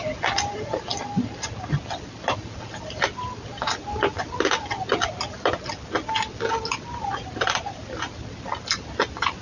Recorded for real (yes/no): yes